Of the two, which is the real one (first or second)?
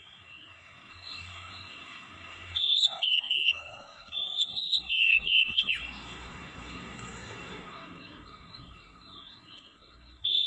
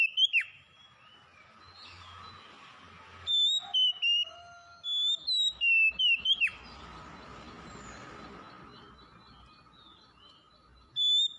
second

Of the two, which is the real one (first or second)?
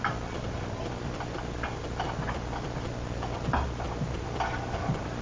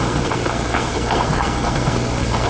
first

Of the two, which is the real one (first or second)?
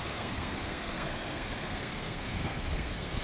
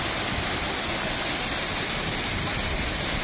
second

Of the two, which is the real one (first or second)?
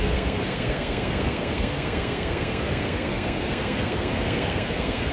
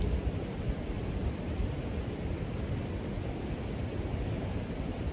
second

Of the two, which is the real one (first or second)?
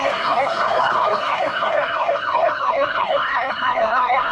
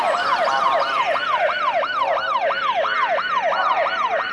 second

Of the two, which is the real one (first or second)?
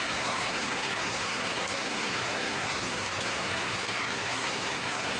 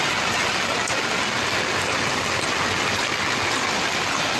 second